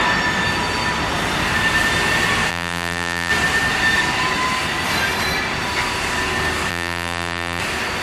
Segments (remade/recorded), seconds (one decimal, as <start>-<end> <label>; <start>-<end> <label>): 0.0-2.5 recorded; 2.5-3.3 remade; 3.3-6.7 recorded; 6.7-7.6 remade; 7.6-8.0 recorded